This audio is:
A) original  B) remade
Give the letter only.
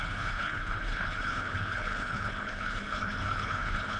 B